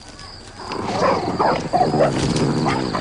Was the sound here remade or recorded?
recorded